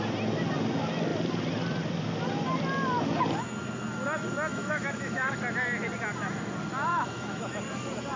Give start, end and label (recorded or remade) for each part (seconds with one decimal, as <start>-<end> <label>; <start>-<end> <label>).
0.0-4.5 recorded; 4.5-5.4 remade; 5.4-6.9 recorded; 6.9-7.6 remade; 7.6-8.2 recorded